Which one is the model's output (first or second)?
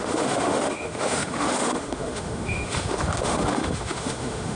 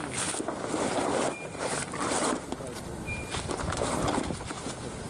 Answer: first